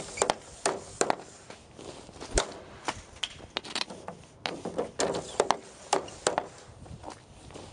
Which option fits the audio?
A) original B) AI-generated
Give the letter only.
A